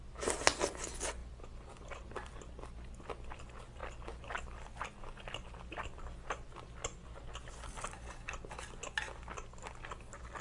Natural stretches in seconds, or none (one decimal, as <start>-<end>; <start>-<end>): 0.0-1.2; 2.3-10.4